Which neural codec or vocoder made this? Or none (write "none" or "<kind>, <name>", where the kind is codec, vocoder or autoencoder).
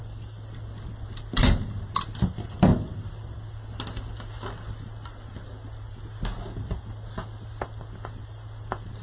none